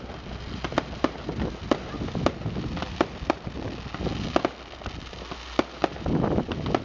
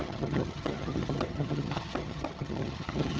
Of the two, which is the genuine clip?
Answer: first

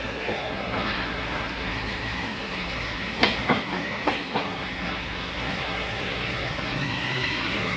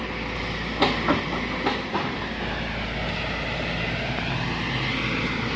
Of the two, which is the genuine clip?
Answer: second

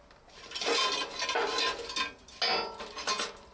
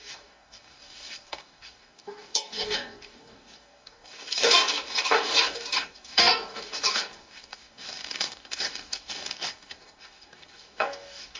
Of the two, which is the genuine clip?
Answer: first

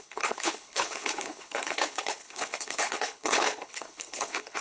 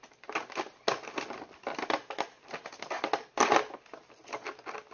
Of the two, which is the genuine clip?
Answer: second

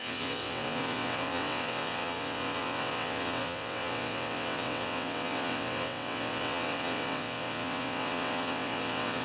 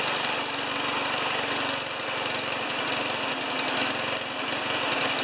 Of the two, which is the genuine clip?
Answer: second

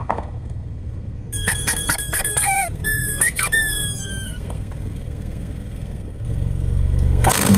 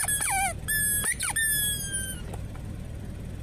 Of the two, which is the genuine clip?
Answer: second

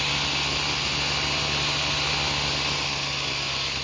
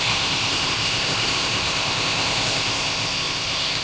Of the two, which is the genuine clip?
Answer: first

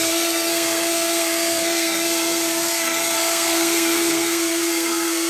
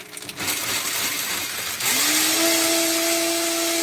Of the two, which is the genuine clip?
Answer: second